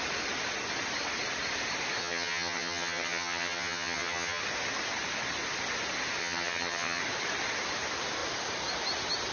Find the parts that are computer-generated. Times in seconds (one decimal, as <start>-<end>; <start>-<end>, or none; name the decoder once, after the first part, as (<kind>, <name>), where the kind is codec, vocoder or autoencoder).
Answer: 2.0-4.4 (vocoder, HiFi-GAN); 6.2-7.0